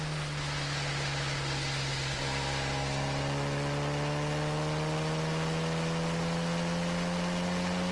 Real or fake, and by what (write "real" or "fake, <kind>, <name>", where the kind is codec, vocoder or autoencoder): real